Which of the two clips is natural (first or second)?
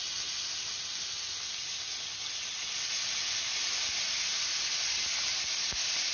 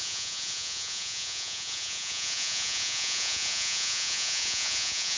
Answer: first